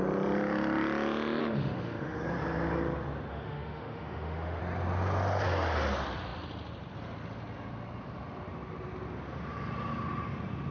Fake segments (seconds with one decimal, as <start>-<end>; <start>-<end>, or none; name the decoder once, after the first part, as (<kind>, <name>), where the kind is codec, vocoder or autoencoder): 1.4-2.2 (autoencoder, DAC-VAE); 3.3-4.6